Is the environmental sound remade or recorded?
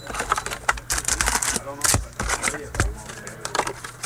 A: recorded